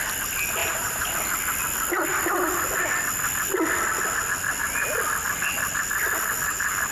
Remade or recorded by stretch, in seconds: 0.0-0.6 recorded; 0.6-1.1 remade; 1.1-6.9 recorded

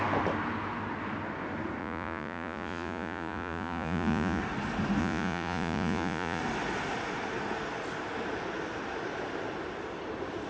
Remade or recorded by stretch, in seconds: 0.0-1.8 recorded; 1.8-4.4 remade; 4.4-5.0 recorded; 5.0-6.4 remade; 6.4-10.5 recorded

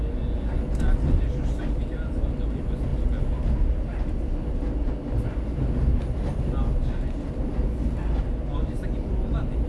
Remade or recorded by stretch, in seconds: 0.0-9.7 recorded

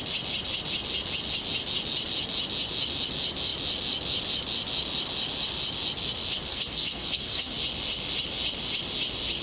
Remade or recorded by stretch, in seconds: 0.0-6.5 recorded; 6.5-7.5 remade; 7.5-9.4 recorded

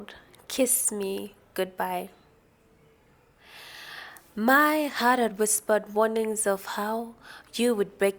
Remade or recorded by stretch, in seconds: 0.0-8.2 recorded

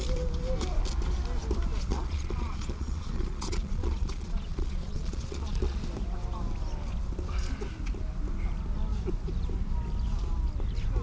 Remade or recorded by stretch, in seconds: 0.0-1.9 recorded; 1.9-5.8 remade; 5.8-11.0 recorded

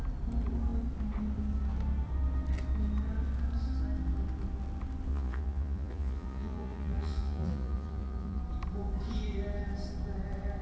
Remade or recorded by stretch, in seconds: 0.0-5.1 recorded; 5.1-8.4 remade; 8.4-10.6 recorded